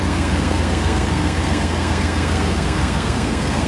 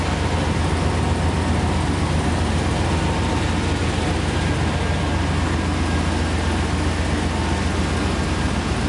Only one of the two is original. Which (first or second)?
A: second